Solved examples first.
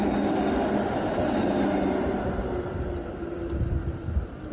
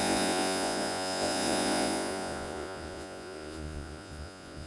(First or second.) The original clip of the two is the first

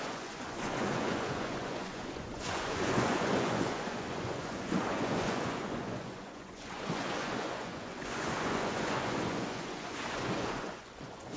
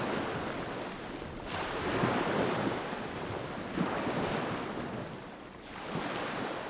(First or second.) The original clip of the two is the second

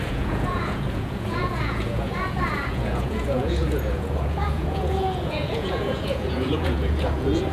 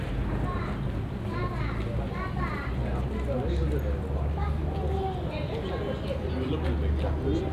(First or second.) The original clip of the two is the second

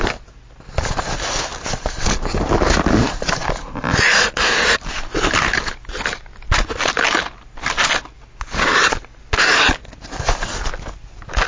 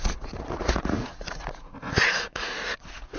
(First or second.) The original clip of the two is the first